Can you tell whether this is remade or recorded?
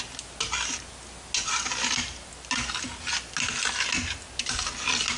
recorded